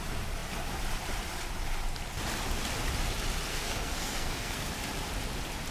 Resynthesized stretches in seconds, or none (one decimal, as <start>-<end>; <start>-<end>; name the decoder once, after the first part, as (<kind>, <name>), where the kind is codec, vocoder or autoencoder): 3.5-4.7 (codec, SNAC)